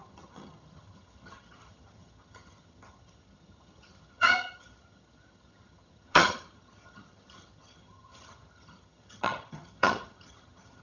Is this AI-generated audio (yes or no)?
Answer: yes